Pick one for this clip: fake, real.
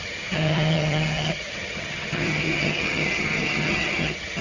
fake